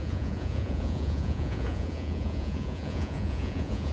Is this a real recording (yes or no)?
no